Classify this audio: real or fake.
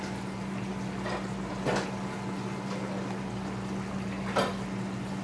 real